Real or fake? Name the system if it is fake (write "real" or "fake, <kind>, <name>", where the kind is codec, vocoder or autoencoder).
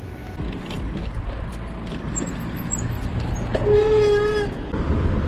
real